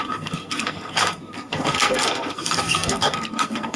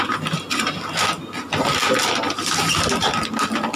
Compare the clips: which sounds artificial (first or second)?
first